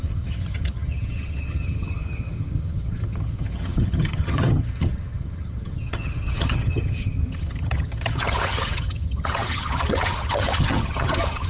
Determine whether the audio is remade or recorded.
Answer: remade